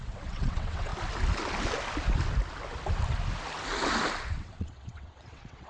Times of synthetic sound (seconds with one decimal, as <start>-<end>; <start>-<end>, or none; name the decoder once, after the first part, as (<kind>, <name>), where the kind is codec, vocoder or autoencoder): 0.0-0.9 (vocoder, WaveNeXt); 4.3-5.7